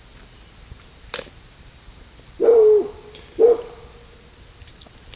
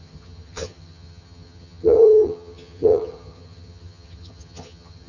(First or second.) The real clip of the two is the first